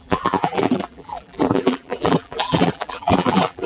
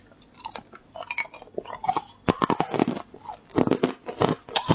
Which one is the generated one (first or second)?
first